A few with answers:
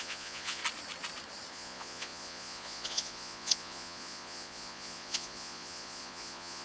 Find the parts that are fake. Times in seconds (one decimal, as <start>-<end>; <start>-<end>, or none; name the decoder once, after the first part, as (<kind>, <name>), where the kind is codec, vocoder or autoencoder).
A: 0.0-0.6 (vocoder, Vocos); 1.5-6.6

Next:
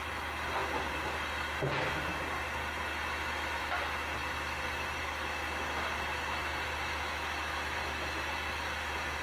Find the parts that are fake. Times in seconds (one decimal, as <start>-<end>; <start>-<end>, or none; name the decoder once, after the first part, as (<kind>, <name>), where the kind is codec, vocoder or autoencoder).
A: none

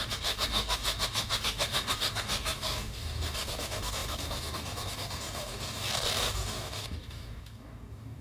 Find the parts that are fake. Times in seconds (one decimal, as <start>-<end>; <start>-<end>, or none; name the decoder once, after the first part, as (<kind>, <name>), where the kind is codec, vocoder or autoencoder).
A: 0.0-8.2 (codec, DAC)